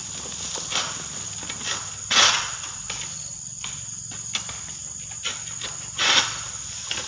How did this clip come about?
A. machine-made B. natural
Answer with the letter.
B